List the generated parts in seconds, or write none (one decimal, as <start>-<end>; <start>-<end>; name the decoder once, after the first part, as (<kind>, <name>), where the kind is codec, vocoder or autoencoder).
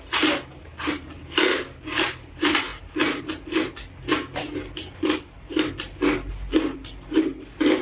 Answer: none